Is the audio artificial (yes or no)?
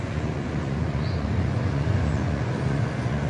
yes